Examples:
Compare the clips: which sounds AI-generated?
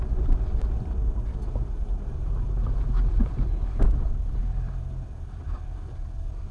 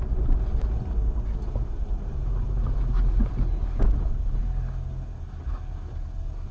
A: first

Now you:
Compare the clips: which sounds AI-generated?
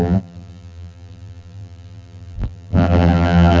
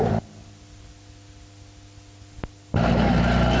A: first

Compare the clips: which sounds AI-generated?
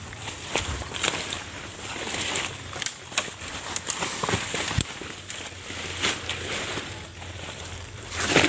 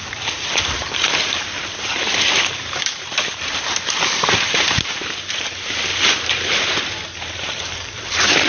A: second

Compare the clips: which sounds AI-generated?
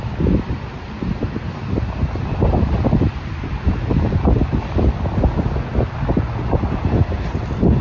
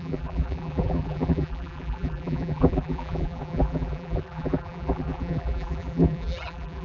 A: second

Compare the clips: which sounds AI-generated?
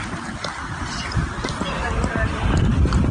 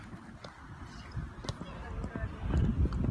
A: first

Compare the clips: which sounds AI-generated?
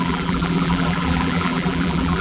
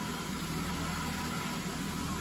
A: first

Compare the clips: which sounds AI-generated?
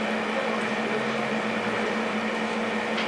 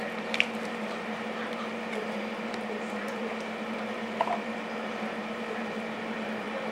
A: second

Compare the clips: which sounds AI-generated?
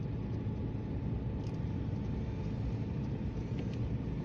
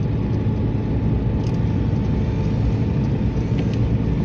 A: first